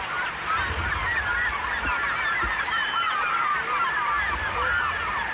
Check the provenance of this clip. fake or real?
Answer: real